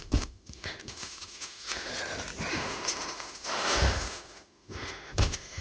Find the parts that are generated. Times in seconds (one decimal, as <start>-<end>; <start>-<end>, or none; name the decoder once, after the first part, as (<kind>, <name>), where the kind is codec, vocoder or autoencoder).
0.0-1.9 (autoencoder, DAC-VAE); 2.5-5.6